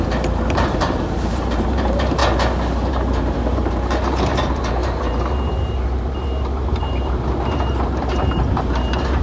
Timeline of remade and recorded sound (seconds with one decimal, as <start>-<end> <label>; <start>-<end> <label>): 0.0-2.2 remade; 2.2-2.9 recorded; 2.9-9.2 remade